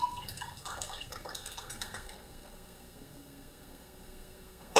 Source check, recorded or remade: remade